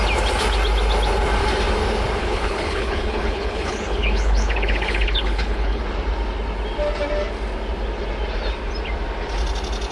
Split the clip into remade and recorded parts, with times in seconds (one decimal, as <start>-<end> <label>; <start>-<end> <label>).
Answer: 0.0-2.2 recorded; 2.2-5.8 remade; 5.8-9.9 recorded